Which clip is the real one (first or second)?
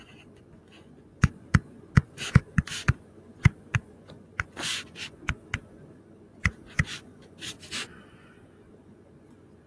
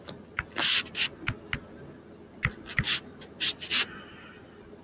second